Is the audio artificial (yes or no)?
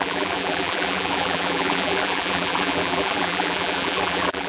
yes